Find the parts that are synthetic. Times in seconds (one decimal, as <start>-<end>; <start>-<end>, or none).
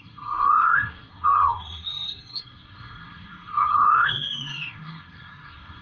0.0-5.8